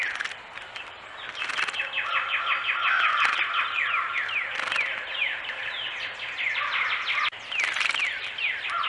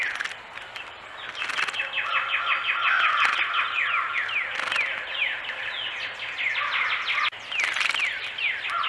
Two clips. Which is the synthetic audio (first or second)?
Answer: first